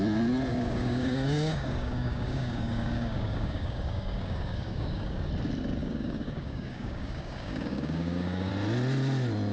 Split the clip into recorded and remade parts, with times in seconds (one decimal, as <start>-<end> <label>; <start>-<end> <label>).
0.0-0.5 recorded; 0.5-5.3 remade; 5.3-5.8 recorded; 5.8-8.5 remade; 8.5-9.5 recorded